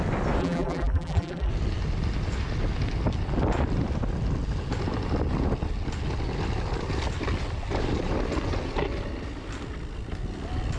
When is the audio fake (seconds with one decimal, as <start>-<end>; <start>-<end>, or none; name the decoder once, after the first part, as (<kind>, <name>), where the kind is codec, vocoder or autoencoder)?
0.4-1.5 (vocoder, BigVGAN v2)